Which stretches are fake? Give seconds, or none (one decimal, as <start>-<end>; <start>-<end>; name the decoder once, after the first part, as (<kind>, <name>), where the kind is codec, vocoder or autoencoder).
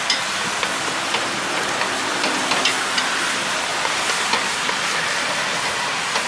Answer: none